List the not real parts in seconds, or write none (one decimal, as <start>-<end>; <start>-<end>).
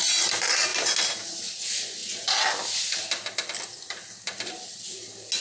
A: none